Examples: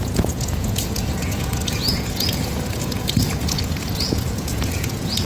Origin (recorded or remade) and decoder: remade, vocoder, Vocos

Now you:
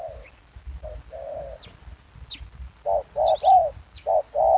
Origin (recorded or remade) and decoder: recorded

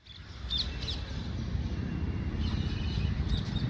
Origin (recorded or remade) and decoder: remade, vocoder, BigVGAN v2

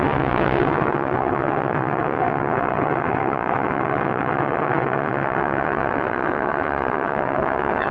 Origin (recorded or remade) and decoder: remade, vocoder, WaveNeXt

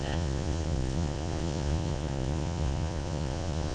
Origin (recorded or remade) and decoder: remade, vocoder, Vocos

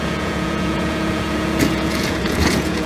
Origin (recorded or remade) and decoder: remade, vocoder, Vocos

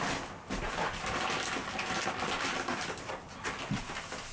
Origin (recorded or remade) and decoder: recorded